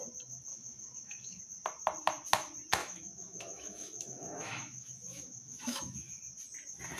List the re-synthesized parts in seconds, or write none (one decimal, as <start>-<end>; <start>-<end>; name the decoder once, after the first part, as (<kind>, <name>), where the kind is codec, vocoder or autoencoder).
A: 0.5-1.4 (autoencoder, DAC-VAE); 2.8-6.2